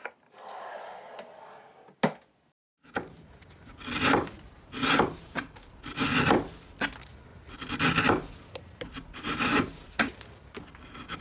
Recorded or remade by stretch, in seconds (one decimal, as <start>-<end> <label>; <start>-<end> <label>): 0.0-11.2 recorded